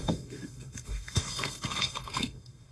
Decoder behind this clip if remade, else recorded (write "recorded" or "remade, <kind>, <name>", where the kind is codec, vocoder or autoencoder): remade, codec, SNAC